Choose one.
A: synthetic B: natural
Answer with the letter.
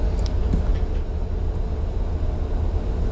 B